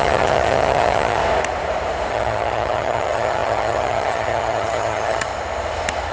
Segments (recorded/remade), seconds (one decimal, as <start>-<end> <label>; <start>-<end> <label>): 0.0-1.2 remade; 1.2-2.1 recorded; 2.1-5.3 remade; 5.3-6.1 recorded